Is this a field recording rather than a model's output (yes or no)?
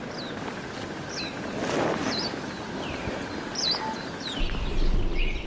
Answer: yes